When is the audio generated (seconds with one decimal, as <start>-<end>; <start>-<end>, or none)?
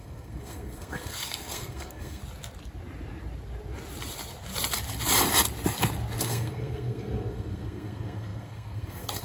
0.0-2.2; 6.2-9.2